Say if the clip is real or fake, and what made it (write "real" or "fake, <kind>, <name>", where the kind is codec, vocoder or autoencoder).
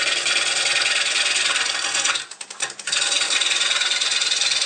real